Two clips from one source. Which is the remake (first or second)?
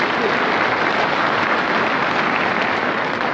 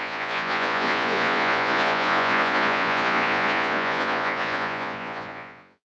second